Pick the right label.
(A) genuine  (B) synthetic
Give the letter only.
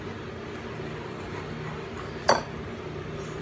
A